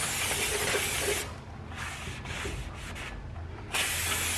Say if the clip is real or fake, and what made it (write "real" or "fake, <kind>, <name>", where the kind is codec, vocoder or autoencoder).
real